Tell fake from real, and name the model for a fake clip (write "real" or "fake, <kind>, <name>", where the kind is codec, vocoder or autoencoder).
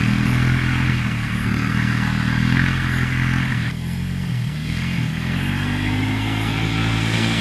fake, codec, SNAC